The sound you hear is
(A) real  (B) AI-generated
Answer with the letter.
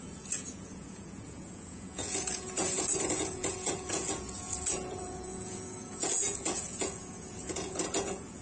B